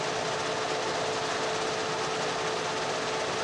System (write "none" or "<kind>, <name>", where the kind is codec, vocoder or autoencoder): none